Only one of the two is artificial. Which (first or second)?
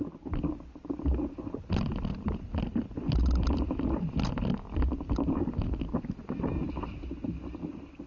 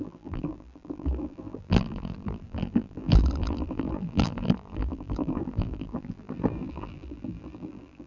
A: second